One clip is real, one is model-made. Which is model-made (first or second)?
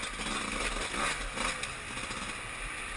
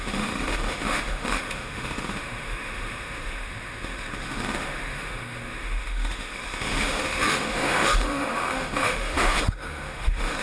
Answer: second